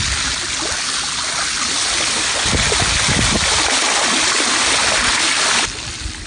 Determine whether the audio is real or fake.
real